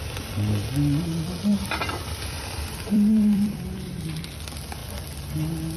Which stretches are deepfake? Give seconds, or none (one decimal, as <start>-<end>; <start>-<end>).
1.5-4.0